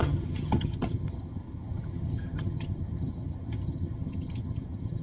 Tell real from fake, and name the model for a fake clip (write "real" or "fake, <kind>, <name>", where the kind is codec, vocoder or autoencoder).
fake, vocoder, HiFi-GAN